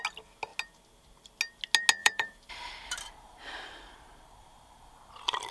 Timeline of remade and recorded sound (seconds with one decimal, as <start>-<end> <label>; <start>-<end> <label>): 0.0-2.0 recorded; 2.0-5.1 remade; 5.1-5.5 recorded